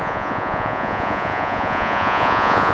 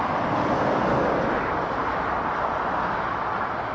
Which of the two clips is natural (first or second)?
second